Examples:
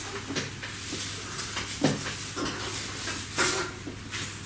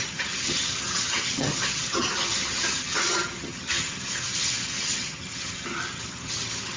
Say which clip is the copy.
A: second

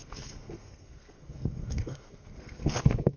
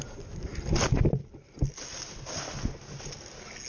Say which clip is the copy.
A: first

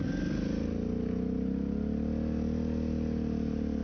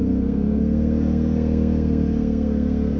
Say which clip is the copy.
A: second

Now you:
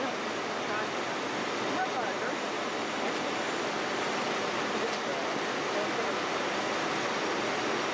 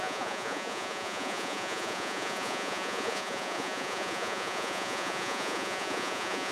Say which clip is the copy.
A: second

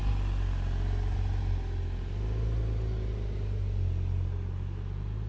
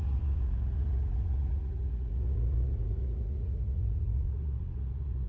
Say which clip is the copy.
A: second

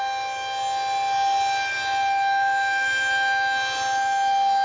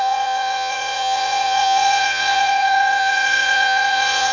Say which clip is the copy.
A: second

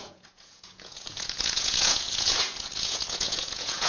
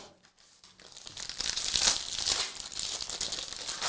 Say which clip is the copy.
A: first